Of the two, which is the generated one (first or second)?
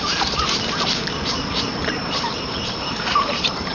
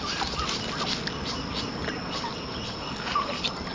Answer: first